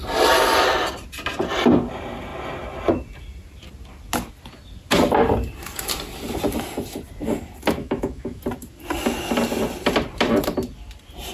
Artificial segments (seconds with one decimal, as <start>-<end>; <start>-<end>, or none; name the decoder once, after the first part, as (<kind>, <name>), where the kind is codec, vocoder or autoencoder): 7.8-8.4 (autoencoder, DAC-VAE)

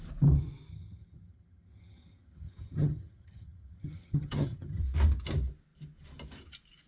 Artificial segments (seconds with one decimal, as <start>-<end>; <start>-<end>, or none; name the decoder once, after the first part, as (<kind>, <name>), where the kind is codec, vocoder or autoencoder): 0.7-4.8 (vocoder, HiFi-GAN)

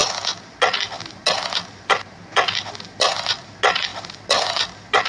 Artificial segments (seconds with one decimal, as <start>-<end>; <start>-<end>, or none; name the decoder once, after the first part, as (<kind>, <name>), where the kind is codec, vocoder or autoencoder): none

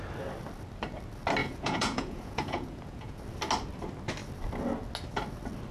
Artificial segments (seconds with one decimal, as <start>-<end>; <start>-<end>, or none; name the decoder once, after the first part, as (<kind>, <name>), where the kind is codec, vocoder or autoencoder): 1.4-3.2 (vocoder, Vocos)

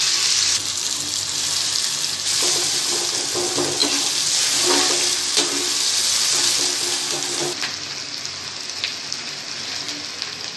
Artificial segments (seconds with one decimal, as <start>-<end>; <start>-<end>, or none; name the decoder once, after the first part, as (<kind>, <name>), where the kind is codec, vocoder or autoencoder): 0.6-2.8 (vocoder, BigVGAN v2)

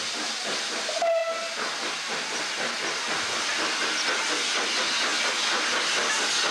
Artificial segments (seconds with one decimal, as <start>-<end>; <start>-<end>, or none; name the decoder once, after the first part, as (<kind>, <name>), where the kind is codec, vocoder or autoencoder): none

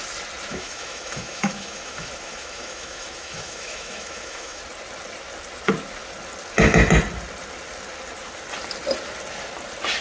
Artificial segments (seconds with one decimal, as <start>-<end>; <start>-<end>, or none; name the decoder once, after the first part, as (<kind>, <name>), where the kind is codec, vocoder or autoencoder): 0.5-4.6 (autoencoder, DAC-VAE)